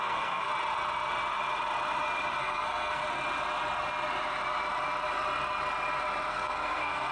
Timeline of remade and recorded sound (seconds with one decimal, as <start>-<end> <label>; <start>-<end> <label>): 0.0-0.5 remade; 0.5-2.4 recorded; 2.4-3.0 remade; 3.0-6.3 recorded; 6.3-7.1 remade